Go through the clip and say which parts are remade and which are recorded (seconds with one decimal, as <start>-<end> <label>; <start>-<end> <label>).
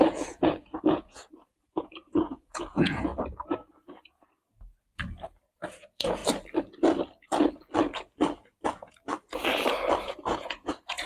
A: 0.0-3.1 remade; 3.1-3.7 recorded; 3.7-4.3 remade; 4.3-5.8 recorded; 5.8-6.2 remade; 6.2-10.0 recorded; 10.0-11.1 remade